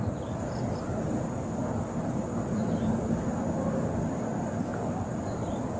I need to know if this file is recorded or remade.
recorded